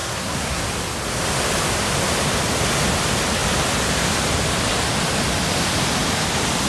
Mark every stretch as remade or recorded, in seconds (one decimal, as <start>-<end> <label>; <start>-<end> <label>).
0.0-0.6 remade; 0.6-6.7 recorded